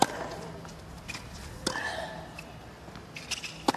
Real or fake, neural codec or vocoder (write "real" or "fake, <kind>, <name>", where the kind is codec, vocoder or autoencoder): real